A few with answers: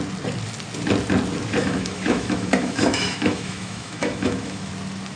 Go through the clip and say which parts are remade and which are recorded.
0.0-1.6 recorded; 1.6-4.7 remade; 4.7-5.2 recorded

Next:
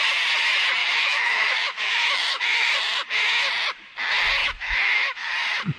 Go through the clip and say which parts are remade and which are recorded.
0.0-0.8 recorded; 0.8-2.7 remade; 2.7-4.4 recorded; 4.4-5.3 remade; 5.3-5.8 recorded

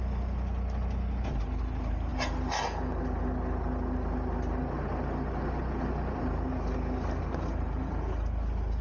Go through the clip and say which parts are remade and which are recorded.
0.0-8.8 recorded

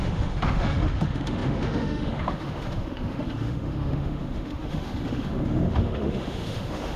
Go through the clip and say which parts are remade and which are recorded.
0.0-7.0 remade

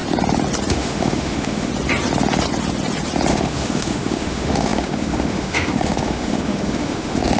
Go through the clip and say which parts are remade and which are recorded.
0.0-0.7 recorded; 0.7-1.7 remade; 1.7-3.3 recorded; 3.3-7.4 remade